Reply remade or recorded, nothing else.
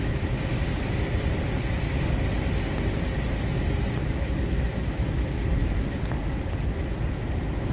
recorded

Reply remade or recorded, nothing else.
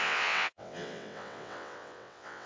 remade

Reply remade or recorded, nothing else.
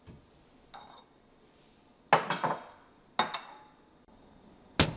recorded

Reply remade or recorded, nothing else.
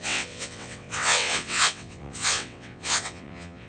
remade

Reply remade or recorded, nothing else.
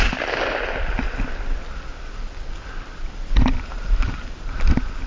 recorded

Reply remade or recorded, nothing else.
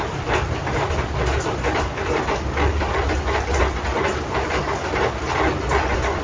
recorded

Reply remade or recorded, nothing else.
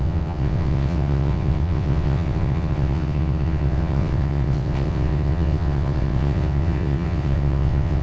remade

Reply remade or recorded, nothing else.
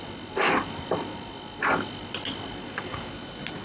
recorded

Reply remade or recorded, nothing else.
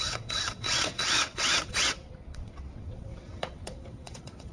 remade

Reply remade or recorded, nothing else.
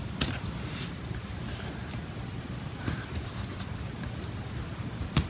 recorded